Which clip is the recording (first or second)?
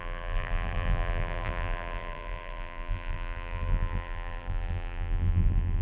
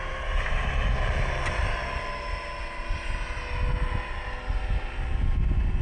second